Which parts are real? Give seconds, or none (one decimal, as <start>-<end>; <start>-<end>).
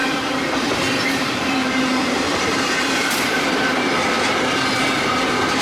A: 3.4-5.6